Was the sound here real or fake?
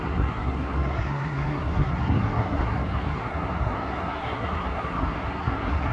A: fake